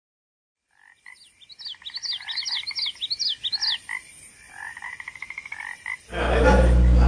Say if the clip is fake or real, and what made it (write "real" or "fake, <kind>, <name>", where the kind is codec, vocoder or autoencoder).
real